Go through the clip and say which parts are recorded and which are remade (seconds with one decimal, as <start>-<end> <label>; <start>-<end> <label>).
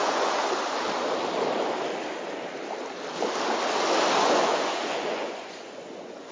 0.0-0.4 remade; 0.4-4.2 recorded; 4.2-6.3 remade